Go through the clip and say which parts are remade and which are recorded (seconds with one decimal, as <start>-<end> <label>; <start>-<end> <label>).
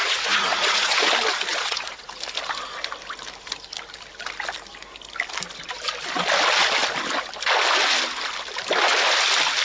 0.0-1.1 remade; 1.1-1.5 recorded; 1.5-2.1 remade; 2.1-9.6 recorded